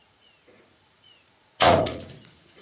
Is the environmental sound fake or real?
fake